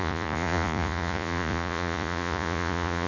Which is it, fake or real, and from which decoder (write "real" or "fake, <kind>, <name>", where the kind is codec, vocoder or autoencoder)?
fake, vocoder, Vocos